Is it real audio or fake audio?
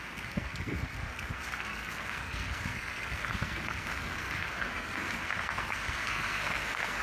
fake